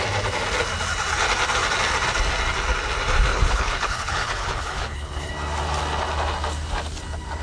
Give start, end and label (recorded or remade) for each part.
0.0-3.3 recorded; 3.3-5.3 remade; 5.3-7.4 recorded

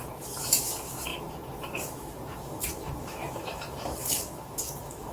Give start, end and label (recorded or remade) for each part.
0.0-5.1 remade